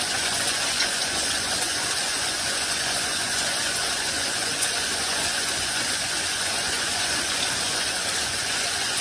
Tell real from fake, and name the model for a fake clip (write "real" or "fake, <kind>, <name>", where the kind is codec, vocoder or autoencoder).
fake, vocoder, Vocos